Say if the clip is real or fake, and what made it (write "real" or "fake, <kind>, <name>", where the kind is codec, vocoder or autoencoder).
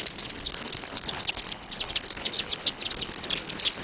fake, codec, HILCodec